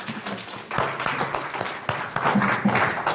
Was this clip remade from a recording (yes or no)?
no